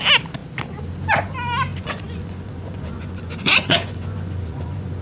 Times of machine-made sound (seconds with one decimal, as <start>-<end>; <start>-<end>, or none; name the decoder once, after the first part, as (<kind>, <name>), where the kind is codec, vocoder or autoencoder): 1.7-5.0 (vocoder, Vocos)